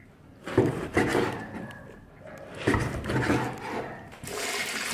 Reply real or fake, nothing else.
real